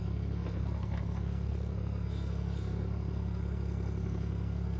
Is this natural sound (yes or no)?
no